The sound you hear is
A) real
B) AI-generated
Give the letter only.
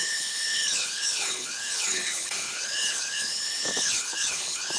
B